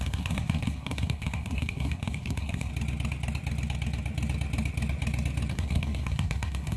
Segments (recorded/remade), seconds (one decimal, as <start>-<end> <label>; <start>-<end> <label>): 0.0-2.7 remade; 2.7-5.5 recorded; 5.5-6.8 remade